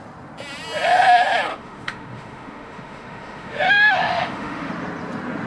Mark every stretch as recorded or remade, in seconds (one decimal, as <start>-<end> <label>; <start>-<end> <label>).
0.0-1.5 recorded; 1.5-4.7 remade; 4.7-5.5 recorded